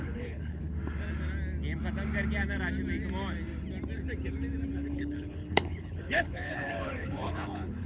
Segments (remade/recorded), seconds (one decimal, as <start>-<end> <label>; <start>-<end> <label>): 0.0-0.6 remade; 0.6-4.7 recorded; 4.7-7.9 remade